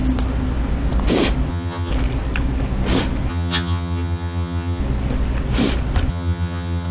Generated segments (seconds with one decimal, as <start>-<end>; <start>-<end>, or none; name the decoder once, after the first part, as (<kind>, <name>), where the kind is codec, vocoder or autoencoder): 1.5-1.9 (vocoder, HiFi-GAN); 3.3-4.8; 6.1-6.9